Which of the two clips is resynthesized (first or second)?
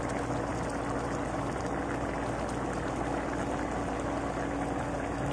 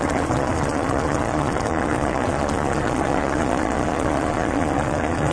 second